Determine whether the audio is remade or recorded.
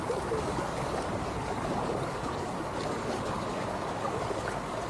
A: remade